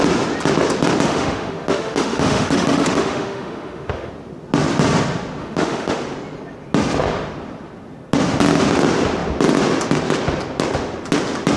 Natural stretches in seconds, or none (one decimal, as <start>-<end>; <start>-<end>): 0.0-1.1; 4.1-5.4; 6.0-11.6